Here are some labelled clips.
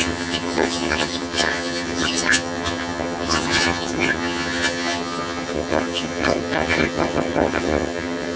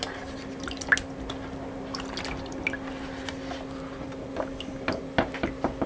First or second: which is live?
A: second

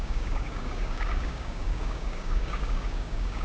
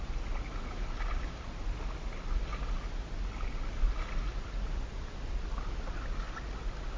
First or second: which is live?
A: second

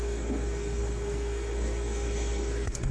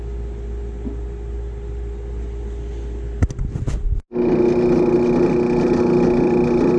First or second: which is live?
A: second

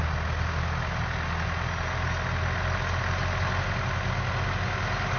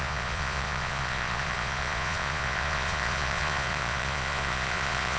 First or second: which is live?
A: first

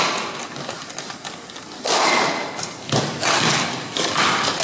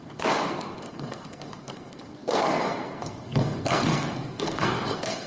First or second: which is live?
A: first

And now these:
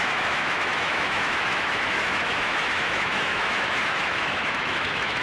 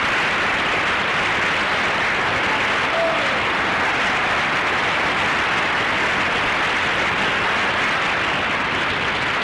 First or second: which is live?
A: second